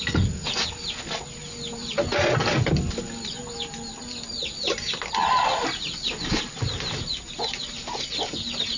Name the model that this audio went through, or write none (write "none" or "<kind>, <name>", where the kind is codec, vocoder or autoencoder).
none